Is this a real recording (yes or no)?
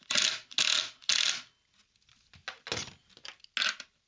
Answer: yes